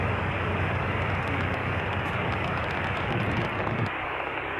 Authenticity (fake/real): fake